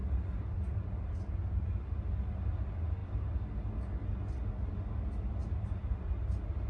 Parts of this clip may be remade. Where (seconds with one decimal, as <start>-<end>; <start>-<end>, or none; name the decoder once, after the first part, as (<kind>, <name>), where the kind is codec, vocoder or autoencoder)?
0.0-1.7 (vocoder, BigVGAN v2); 5.4-6.2